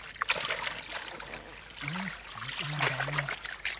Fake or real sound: real